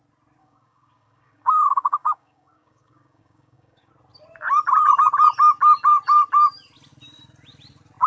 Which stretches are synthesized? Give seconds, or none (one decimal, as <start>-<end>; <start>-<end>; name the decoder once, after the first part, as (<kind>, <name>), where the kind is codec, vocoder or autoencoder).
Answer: 0.4-3.9 (codec, DAC)